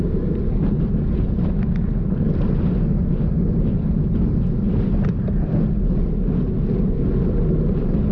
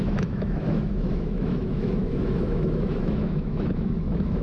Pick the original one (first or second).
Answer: first